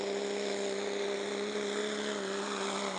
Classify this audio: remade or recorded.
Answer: recorded